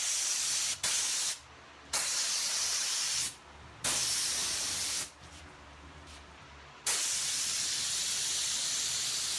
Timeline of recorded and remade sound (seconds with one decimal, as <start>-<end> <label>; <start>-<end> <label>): 0.0-9.4 recorded